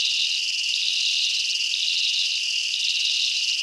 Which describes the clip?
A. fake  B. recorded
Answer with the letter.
B